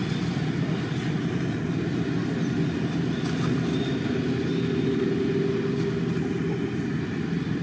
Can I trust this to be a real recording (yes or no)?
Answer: yes